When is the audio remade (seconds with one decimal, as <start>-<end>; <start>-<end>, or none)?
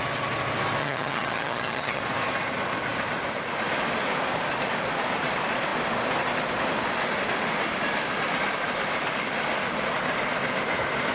0.8-2.0